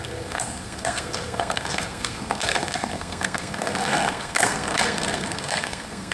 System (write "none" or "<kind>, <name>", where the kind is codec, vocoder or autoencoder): codec, SNAC